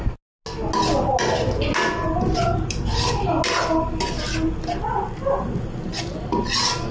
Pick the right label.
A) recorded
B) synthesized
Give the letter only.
A